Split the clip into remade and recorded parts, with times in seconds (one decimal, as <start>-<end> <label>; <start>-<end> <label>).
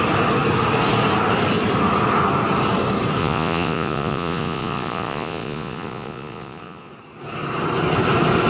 0.0-3.2 recorded; 3.2-6.9 remade; 6.9-8.5 recorded